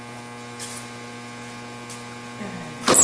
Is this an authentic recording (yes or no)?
yes